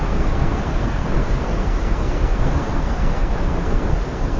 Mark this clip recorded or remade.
remade